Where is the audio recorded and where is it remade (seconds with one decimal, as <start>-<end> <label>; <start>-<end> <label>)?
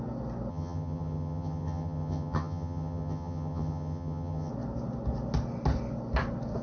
0.0-0.5 recorded; 0.5-4.5 remade; 4.5-6.6 recorded